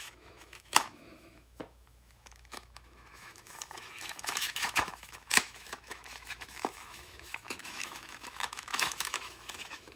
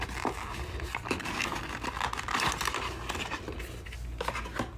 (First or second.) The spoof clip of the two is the first